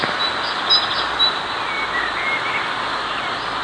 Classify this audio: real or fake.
real